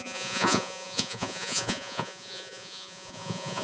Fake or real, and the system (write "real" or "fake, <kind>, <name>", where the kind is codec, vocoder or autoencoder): fake, vocoder, Vocos